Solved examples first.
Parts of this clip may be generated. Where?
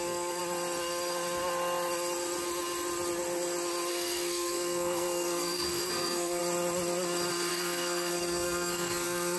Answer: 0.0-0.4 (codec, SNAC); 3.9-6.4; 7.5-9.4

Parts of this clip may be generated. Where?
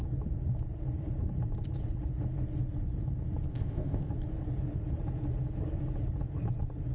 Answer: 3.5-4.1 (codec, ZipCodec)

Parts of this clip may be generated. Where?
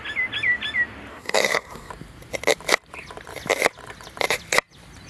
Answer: 1.1-1.9 (codec, SNAC)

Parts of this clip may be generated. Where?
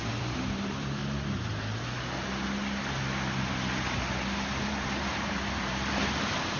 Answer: 0.0-1.0 (vocoder, BigVGAN v2); 4.6-6.6